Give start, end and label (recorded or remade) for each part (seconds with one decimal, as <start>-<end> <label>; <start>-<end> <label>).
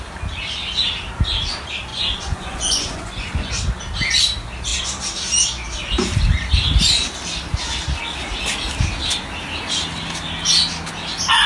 0.0-1.9 recorded; 1.9-3.5 remade; 3.5-11.5 recorded